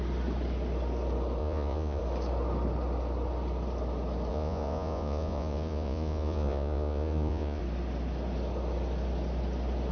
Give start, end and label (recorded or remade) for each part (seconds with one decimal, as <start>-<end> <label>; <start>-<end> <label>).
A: 0.0-1.4 recorded; 1.4-2.0 remade; 2.0-4.3 recorded; 4.3-7.6 remade; 7.6-9.9 recorded